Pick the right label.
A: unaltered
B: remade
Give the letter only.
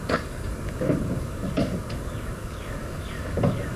B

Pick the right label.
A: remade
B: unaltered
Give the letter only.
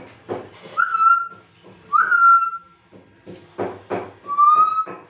B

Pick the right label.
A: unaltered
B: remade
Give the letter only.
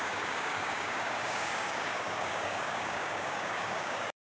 B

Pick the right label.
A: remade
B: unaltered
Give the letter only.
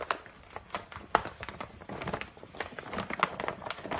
B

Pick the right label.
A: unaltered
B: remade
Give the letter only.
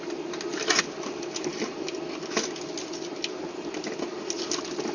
A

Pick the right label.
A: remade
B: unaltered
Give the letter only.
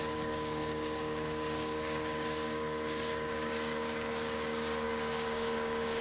A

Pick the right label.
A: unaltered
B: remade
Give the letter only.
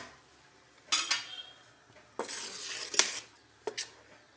A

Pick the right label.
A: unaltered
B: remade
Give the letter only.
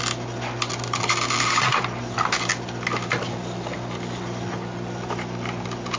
A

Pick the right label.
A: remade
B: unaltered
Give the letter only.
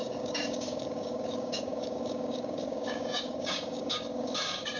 A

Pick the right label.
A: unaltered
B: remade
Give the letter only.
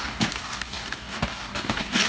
B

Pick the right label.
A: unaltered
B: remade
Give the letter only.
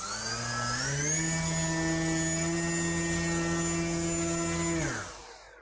A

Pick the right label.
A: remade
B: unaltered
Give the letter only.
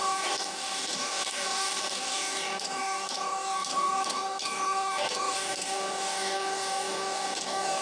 A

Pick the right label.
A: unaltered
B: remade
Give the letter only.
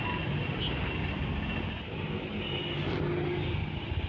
A